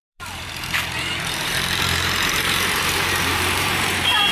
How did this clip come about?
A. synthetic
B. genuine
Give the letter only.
A